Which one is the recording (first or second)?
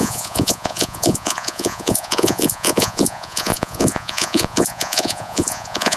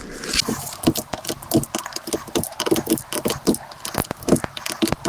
second